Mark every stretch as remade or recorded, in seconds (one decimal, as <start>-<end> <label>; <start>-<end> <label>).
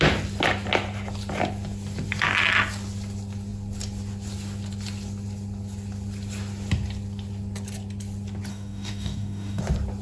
0.0-8.5 recorded; 8.5-9.6 remade; 9.6-10.0 recorded